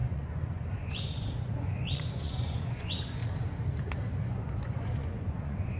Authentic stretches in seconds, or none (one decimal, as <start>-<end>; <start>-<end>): 3.2-4.2